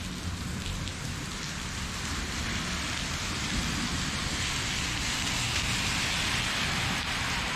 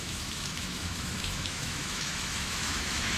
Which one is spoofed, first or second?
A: second